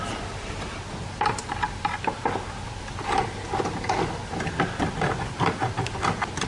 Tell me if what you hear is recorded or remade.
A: recorded